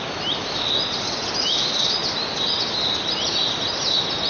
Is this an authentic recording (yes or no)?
yes